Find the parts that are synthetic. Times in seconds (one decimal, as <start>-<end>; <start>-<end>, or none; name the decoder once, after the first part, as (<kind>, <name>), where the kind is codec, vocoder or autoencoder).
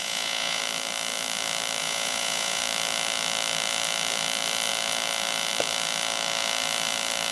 0.0-0.6 (vocoder, Vocos); 1.8-2.6